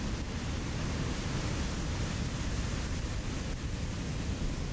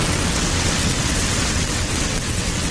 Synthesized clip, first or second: second